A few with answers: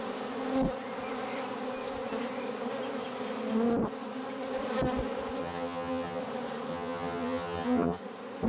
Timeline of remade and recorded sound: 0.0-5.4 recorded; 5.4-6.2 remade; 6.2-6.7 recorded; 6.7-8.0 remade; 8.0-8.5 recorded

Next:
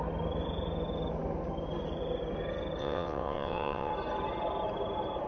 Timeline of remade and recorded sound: 0.0-2.8 recorded; 2.8-3.9 remade; 3.9-5.3 recorded

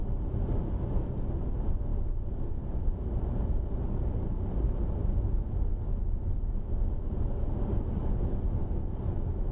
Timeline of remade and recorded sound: 0.0-9.5 recorded

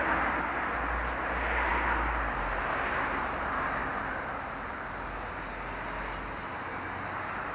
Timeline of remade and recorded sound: 0.0-7.5 recorded

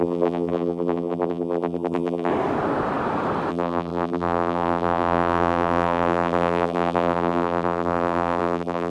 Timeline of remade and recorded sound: 0.0-2.3 remade; 2.3-3.5 recorded; 3.5-8.9 remade